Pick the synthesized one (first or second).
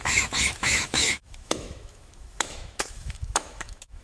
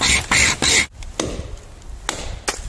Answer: first